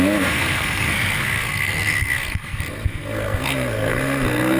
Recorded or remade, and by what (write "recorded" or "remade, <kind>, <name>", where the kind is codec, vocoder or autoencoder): remade, codec, SNAC